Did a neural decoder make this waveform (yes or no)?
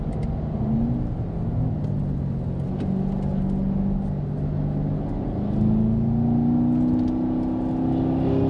no